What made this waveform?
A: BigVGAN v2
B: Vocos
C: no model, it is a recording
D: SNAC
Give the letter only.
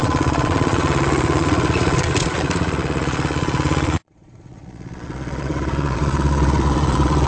B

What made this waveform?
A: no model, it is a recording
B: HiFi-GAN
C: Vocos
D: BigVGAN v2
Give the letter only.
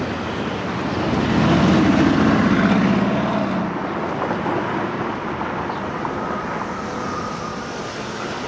A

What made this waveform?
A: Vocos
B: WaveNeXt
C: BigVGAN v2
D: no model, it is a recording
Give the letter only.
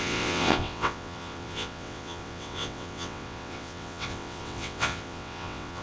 B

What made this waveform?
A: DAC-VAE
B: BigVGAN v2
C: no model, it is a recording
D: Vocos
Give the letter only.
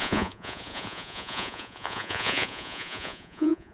D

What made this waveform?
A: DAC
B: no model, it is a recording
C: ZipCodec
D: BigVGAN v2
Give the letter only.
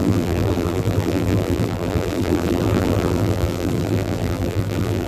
D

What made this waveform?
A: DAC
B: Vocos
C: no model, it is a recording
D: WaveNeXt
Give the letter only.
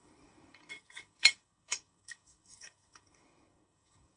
A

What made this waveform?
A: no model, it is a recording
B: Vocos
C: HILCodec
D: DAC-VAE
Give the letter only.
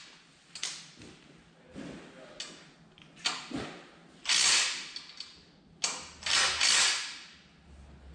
A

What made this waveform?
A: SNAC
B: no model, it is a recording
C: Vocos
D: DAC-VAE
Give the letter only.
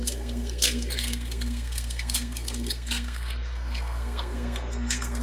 A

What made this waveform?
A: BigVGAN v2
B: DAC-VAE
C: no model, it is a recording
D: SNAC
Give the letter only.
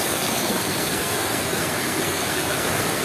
D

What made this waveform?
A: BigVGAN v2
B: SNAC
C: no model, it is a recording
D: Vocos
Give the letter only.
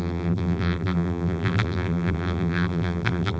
A